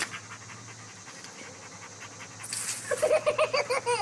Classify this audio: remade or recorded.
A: recorded